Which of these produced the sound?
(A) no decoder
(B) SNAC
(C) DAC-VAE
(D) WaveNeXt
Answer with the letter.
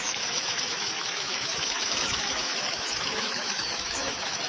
C